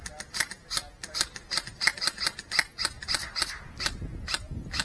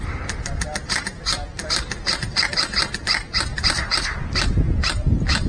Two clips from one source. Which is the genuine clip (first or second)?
first